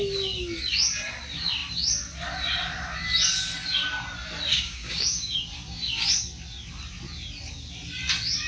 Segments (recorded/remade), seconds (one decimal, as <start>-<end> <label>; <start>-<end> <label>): 0.0-4.5 recorded; 4.5-5.4 remade; 5.4-8.5 recorded